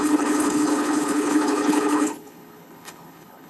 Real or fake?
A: fake